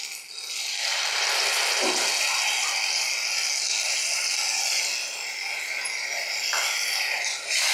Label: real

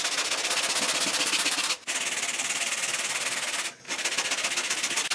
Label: real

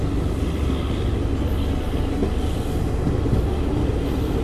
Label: real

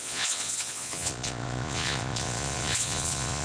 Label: fake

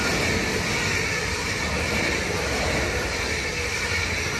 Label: real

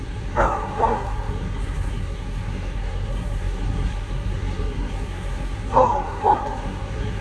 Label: fake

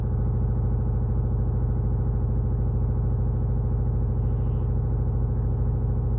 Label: real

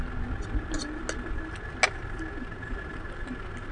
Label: real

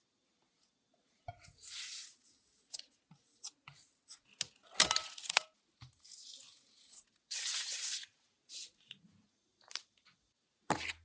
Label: real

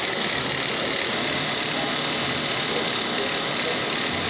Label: real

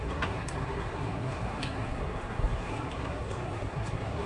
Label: fake